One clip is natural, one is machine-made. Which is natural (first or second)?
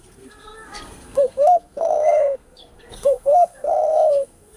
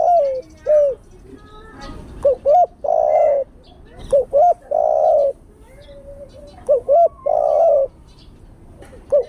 second